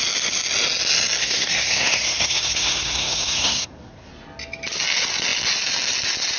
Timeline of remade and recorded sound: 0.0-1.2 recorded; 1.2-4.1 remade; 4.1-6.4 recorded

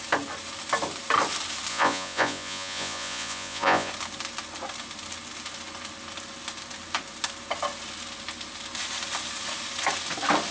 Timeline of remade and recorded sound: 0.0-1.7 recorded; 1.7-3.9 remade; 3.9-10.5 recorded

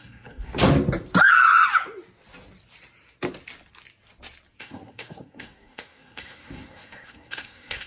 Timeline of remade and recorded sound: 0.0-0.5 remade; 0.5-4.6 recorded; 4.6-7.9 remade

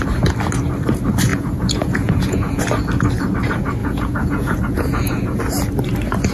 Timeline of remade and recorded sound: 0.0-1.3 recorded; 1.3-2.6 remade; 2.6-3.8 recorded; 3.8-5.4 remade; 5.4-6.3 recorded

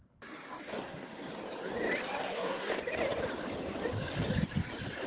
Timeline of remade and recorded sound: 0.0-0.7 recorded; 0.7-1.3 remade; 1.3-2.2 recorded; 2.2-2.7 remade; 2.7-5.1 recorded

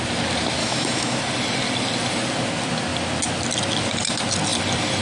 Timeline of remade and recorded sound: 0.0-0.6 recorded; 0.6-1.2 remade; 1.2-5.0 recorded